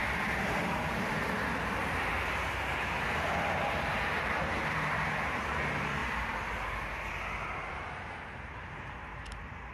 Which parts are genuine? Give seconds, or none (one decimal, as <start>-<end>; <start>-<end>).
1.1-1.8; 6.0-7.7